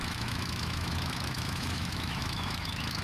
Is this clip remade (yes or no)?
yes